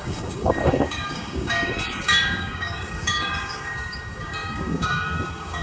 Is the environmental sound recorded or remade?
remade